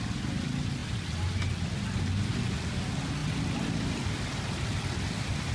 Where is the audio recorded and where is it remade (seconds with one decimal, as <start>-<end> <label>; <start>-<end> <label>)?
0.0-5.5 recorded